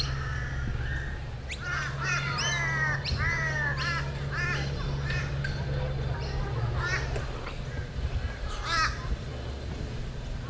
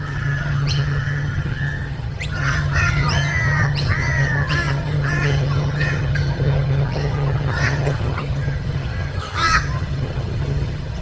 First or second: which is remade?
second